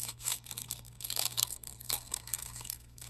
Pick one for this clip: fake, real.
fake